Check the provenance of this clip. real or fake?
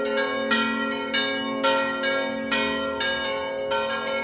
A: real